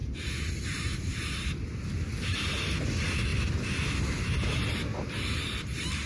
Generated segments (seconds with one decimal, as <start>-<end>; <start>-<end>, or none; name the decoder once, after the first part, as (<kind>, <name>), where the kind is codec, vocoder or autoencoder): 0.0-1.1 (vocoder, BigVGAN v2); 4.9-6.1